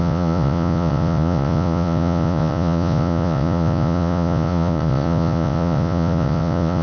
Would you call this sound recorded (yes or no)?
no